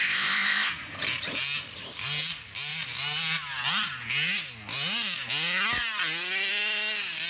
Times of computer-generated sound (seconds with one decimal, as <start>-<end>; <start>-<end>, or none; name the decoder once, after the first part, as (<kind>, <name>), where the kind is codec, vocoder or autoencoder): 0.0-0.7 (codec, ZipCodec)